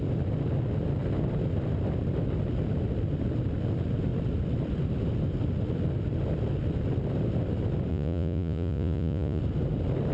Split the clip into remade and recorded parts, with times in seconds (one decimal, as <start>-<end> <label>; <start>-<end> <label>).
0.0-7.9 recorded; 7.9-9.4 remade; 9.4-10.1 recorded